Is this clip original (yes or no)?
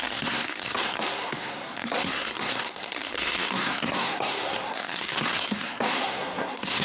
no